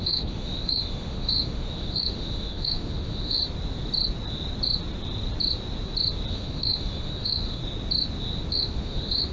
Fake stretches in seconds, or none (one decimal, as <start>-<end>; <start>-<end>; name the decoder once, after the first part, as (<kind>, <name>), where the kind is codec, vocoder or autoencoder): 0.0-3.4 (autoencoder, DAC-VAE); 6.3-7.6; 8.5-9.3